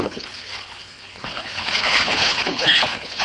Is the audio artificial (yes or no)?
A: yes